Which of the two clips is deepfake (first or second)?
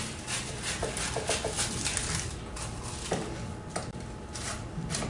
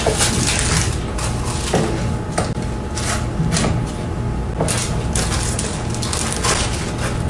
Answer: first